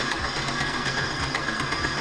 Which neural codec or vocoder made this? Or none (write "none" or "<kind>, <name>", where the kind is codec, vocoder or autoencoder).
codec, SNAC